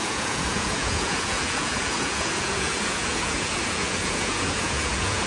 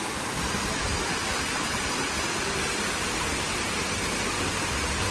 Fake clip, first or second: first